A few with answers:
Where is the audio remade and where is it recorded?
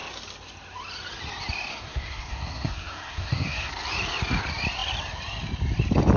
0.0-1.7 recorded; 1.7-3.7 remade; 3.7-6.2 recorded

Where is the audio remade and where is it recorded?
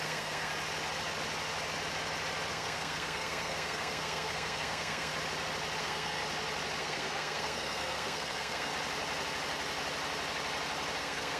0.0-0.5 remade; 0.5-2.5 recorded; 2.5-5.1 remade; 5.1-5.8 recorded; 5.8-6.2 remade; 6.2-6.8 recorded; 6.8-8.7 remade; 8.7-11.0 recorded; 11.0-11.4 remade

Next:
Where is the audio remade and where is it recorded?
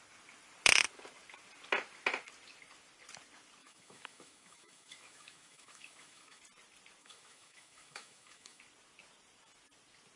0.0-3.6 recorded; 3.6-6.4 remade; 6.4-7.0 recorded; 7.0-8.6 remade; 8.6-10.2 recorded